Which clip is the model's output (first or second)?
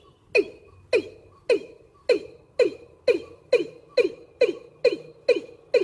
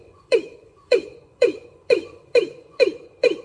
second